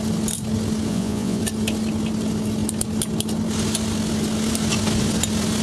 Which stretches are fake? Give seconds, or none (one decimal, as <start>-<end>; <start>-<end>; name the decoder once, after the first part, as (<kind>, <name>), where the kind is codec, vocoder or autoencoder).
0.9-1.4 (vocoder, Vocos)